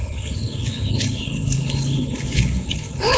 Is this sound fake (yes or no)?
yes